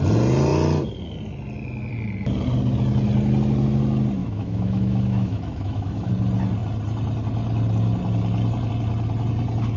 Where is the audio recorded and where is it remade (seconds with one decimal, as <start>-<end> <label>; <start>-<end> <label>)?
0.0-4.2 recorded; 4.2-6.1 remade; 6.1-9.8 recorded